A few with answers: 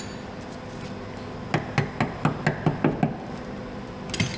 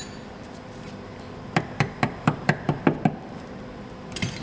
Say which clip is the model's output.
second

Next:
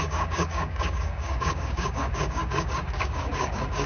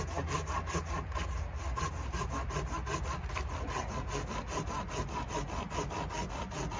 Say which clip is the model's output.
first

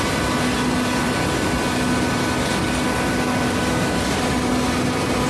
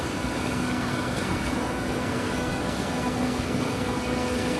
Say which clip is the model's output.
second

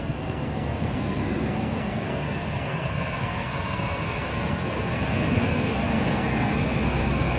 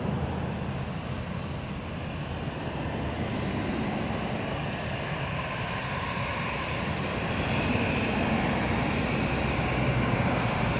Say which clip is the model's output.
first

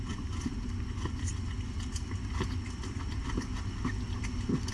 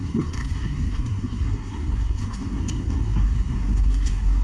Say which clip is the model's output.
second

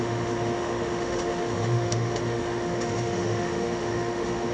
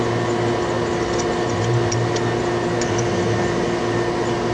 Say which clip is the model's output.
first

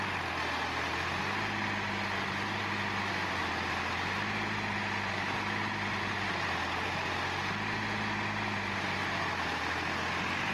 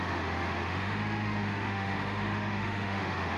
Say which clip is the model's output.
second